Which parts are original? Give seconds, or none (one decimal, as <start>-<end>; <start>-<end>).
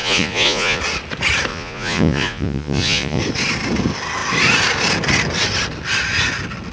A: 0.8-1.5; 3.2-6.7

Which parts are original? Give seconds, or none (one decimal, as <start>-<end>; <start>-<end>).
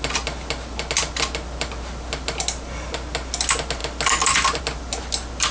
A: 0.0-5.5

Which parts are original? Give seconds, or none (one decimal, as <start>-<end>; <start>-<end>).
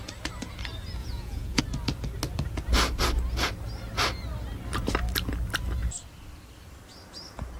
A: 0.0-1.0; 1.6-7.6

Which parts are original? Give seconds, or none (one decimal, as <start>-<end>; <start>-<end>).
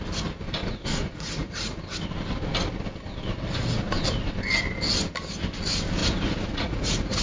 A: 0.0-0.6; 1.8-6.0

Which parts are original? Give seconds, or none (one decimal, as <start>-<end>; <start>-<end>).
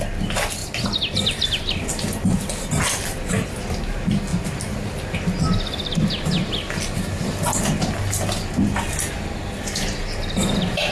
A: 0.0-10.9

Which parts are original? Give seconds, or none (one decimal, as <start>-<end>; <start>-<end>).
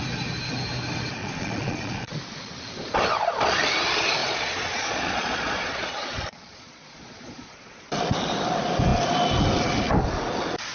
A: 0.0-1.2; 2.2-4.2; 7.9-10.7